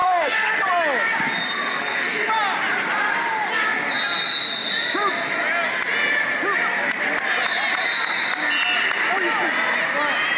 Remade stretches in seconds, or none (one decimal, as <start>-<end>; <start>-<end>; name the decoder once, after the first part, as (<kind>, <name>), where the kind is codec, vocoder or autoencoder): 0.0-0.7 (codec, SNAC); 1.7-2.3